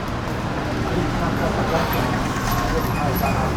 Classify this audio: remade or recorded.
recorded